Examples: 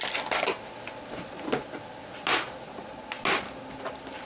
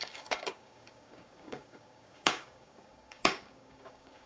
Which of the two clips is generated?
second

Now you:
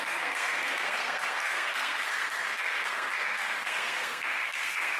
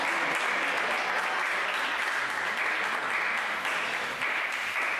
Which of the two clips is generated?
first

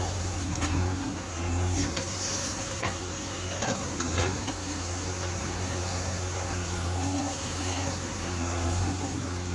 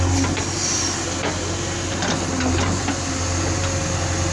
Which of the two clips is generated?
first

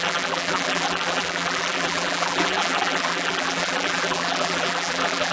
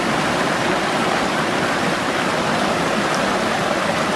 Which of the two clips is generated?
first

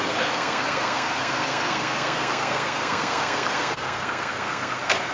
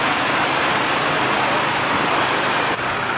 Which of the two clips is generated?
first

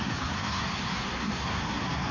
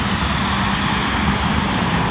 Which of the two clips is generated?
first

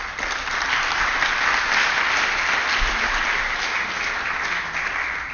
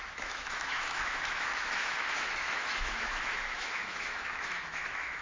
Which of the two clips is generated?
second